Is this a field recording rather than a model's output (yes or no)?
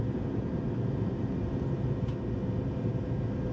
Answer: yes